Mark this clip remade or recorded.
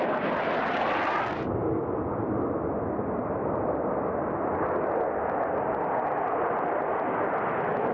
recorded